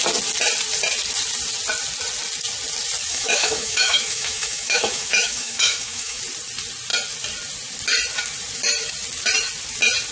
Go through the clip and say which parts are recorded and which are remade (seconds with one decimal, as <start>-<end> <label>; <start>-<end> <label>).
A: 0.0-3.1 recorded; 3.1-6.2 remade; 6.2-10.1 recorded